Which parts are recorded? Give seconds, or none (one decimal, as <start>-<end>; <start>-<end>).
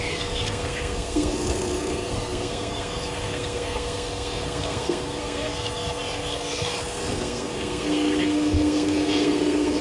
none